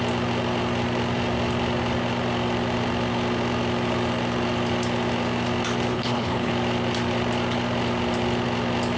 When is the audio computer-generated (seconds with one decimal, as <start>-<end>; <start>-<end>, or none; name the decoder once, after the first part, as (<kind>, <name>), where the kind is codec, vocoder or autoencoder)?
5.9-6.5 (codec, HILCodec)